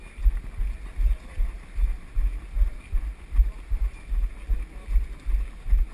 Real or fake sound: real